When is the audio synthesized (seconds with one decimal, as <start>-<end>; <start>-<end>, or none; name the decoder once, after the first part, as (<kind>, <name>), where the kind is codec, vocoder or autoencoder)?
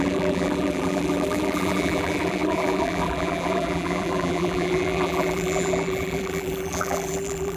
0.0-7.6 (vocoder, BigVGAN v2)